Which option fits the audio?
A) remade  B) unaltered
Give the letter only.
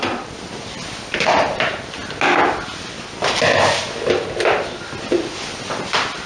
B